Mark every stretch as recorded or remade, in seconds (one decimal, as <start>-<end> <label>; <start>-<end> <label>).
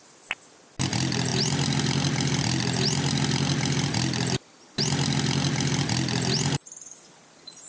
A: 0.0-7.7 recorded